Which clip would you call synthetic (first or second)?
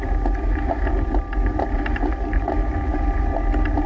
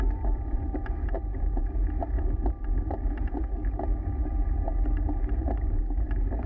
second